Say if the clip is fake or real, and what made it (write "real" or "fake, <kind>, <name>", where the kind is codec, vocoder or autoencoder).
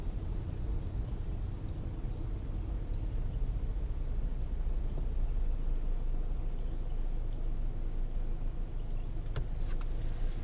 real